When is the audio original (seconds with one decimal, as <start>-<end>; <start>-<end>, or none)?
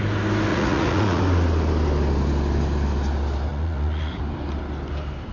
0.0-0.5; 1.2-3.5; 4.2-5.3